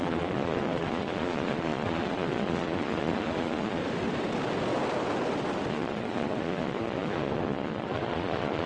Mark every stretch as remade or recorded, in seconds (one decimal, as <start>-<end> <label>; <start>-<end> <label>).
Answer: 0.0-3.8 remade; 3.8-5.7 recorded; 5.7-8.7 remade